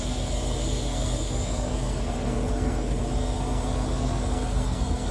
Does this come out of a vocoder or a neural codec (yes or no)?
yes